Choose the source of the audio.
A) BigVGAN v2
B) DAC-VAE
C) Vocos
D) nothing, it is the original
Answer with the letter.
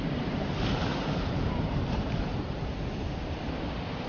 A